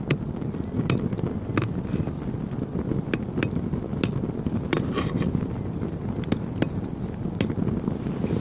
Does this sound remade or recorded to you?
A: recorded